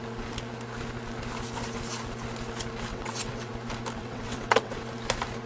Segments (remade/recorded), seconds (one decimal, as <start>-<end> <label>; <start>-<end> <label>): 0.0-2.9 recorded; 2.9-3.5 remade; 3.5-4.0 recorded; 4.0-4.8 remade; 4.8-5.5 recorded